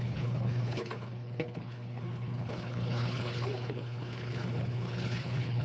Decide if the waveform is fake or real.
fake